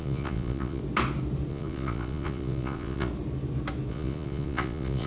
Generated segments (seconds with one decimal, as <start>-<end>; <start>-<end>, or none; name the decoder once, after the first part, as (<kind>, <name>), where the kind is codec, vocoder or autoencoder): 0.0-0.8 (vocoder, Vocos); 1.5-3.1; 3.9-5.1